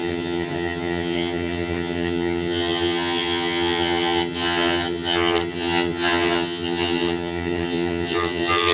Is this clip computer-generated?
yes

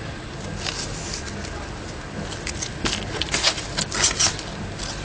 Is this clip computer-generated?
no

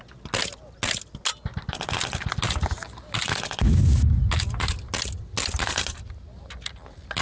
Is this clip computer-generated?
no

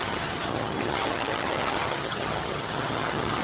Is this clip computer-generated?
yes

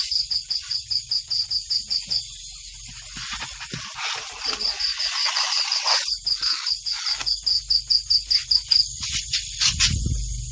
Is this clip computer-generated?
no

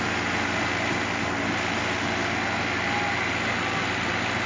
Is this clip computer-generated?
no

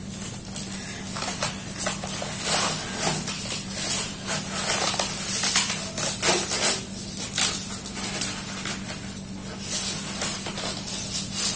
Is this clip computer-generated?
no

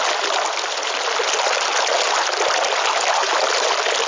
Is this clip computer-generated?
no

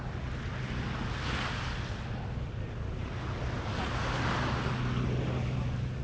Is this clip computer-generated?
no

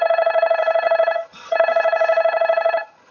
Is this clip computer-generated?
yes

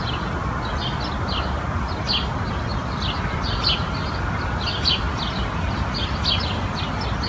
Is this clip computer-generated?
no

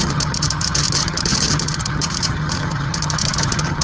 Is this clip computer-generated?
yes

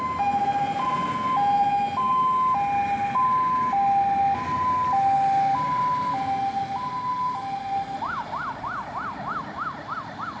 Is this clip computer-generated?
no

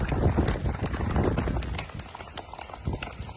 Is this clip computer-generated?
no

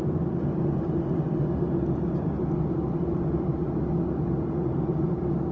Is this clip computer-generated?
no